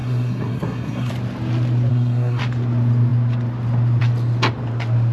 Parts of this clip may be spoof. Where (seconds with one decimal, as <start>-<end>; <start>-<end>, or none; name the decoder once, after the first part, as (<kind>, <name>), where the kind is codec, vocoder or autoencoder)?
0.0-1.1 (codec, SNAC); 1.9-2.4